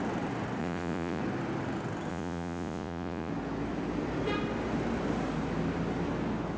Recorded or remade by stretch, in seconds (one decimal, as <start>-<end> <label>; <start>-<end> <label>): 0.0-0.6 recorded; 0.6-1.2 remade; 1.2-2.1 recorded; 2.1-3.3 remade; 3.3-6.6 recorded